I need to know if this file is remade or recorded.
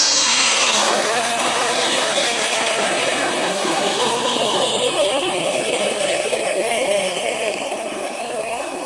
remade